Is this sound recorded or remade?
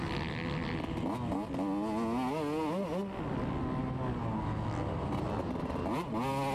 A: recorded